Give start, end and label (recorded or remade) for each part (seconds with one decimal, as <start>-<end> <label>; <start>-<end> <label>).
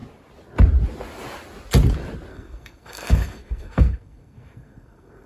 0.0-2.3 recorded; 2.3-5.3 remade